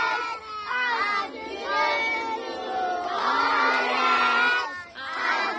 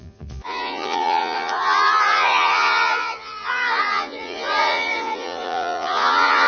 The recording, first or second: first